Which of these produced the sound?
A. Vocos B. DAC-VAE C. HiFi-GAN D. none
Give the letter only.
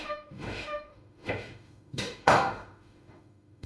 B